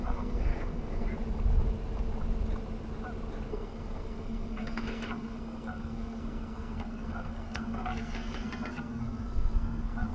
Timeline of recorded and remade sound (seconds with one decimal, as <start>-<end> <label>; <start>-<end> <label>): 0.0-1.1 remade; 1.1-3.5 recorded; 3.5-10.1 remade